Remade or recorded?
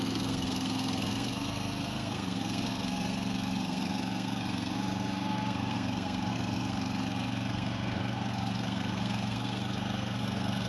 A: remade